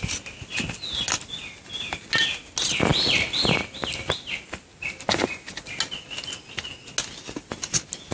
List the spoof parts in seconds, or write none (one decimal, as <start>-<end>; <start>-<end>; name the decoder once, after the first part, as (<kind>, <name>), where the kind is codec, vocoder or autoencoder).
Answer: none